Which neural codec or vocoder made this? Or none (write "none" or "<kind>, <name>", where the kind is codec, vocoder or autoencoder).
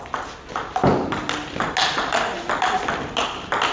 none